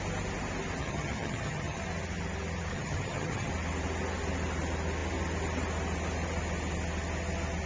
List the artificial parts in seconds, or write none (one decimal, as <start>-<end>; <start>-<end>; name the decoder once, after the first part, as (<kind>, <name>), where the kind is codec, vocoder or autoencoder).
0.8-1.8 (vocoder, HiFi-GAN); 2.7-3.5